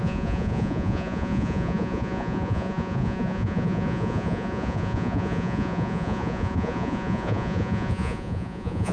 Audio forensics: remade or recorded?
remade